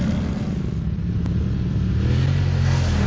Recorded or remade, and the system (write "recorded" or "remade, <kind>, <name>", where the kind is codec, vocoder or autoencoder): recorded